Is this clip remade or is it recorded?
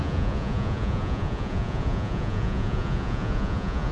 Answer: remade